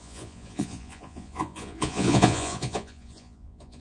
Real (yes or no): no